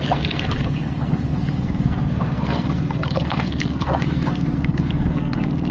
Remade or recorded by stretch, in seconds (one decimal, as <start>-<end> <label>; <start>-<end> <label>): 0.0-5.7 remade